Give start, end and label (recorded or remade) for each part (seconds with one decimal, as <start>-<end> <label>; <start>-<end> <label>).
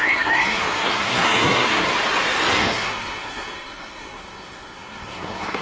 0.0-1.9 remade; 1.9-2.5 recorded; 2.5-5.6 remade